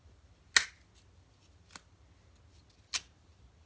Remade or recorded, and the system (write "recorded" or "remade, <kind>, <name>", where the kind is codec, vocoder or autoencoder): recorded